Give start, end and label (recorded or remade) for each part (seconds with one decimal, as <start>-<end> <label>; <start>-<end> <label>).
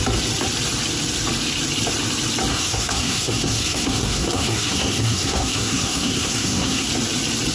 0.0-2.5 recorded; 2.5-6.9 remade; 6.9-7.5 recorded